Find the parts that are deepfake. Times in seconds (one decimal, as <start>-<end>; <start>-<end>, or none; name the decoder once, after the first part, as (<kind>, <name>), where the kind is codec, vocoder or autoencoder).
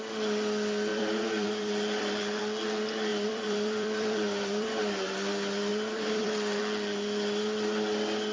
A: 0.9-2.4 (vocoder, BigVGAN v2); 3.1-4.8; 5.7-6.6